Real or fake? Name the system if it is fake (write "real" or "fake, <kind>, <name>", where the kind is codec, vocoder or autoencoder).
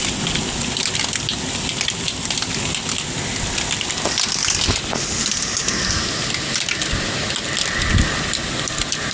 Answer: real